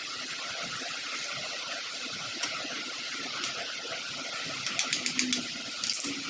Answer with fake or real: real